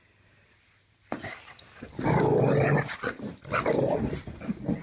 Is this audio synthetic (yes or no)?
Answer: no